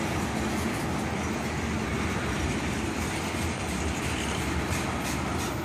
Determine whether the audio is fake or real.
real